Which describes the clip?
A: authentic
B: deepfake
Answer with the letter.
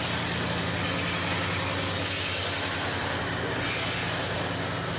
A